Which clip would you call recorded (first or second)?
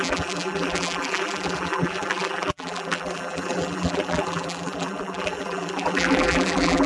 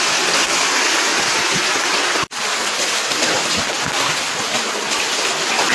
second